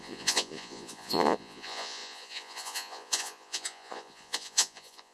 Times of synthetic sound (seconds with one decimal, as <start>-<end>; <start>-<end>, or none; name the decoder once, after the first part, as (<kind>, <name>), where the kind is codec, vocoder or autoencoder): 0.0-5.1 (vocoder, Vocos)